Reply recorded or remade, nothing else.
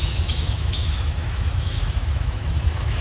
remade